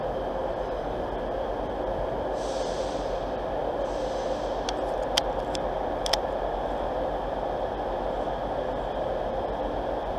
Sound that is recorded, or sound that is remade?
recorded